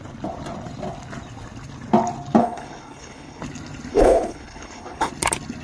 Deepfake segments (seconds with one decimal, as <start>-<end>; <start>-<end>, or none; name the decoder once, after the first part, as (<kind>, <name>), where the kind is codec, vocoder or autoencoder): 2.4-3.4 (codec, HILCodec); 3.9-5.1

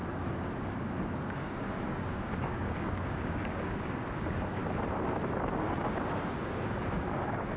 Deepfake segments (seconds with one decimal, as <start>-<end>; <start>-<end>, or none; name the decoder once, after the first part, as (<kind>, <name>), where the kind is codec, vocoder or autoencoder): 1.3-4.6 (codec, DAC); 5.9-7.6

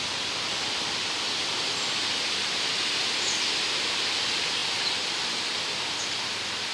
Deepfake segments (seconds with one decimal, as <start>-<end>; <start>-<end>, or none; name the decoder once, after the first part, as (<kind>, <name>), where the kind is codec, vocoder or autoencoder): none

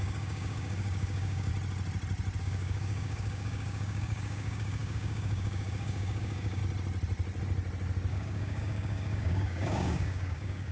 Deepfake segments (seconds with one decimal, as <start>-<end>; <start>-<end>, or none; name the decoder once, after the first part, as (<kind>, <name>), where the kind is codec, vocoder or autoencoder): 0.0-1.5 (codec, DAC); 2.4-6.6; 8.1-10.7

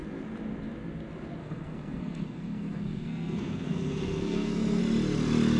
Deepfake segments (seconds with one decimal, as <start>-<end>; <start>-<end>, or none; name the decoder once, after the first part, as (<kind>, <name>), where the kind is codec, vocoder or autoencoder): 1.4-4.8 (codec, SNAC)